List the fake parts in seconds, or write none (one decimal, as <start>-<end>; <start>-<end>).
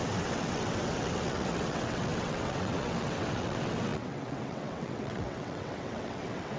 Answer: 0.0-6.6